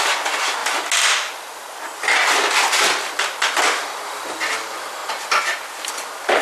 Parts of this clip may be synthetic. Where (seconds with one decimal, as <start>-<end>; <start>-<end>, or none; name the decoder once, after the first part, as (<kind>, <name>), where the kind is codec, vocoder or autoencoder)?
none